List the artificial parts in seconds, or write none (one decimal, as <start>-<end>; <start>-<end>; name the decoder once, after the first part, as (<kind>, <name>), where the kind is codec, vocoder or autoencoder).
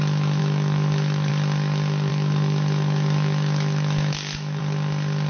0.4-1.3 (autoencoder, DAC-VAE); 2.1-4.6